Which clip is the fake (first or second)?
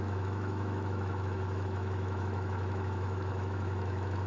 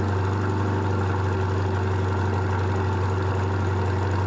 first